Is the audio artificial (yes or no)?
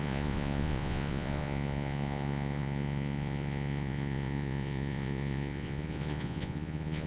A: yes